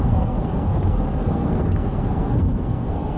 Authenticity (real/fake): fake